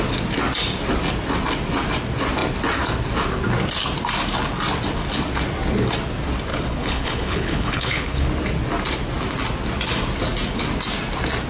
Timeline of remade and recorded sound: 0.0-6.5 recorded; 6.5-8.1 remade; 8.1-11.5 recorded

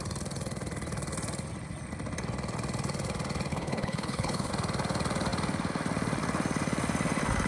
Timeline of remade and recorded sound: 0.0-3.5 recorded; 3.5-4.5 remade; 4.5-7.5 recorded

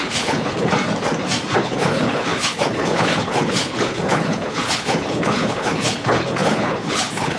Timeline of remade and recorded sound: 0.0-0.7 remade; 0.7-1.6 recorded; 1.6-7.4 remade

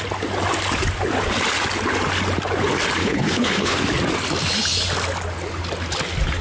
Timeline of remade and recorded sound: 0.0-3.0 recorded; 3.0-3.8 remade; 3.8-6.4 recorded

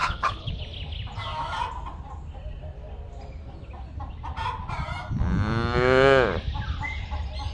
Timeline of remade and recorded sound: 0.0-0.6 remade; 0.6-7.5 recorded